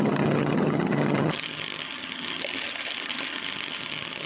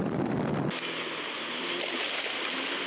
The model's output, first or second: first